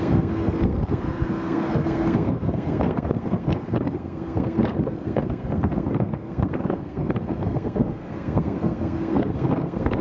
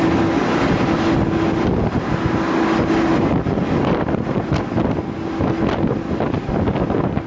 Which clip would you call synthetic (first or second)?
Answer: first